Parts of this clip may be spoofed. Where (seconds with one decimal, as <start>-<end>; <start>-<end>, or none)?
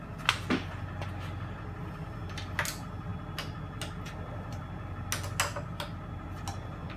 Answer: none